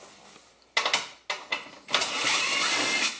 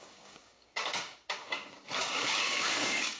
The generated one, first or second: second